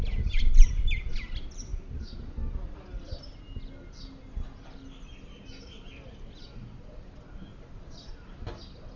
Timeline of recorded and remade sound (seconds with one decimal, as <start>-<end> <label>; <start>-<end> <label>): 0.0-7.5 recorded; 7.5-8.1 remade; 8.1-9.0 recorded